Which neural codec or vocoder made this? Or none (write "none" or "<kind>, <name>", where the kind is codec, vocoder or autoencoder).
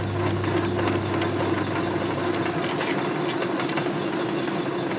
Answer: none